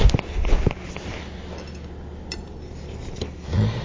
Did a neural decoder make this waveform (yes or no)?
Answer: no